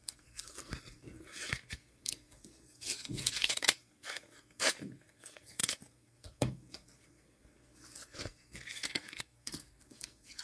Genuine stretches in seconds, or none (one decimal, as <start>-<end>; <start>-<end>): none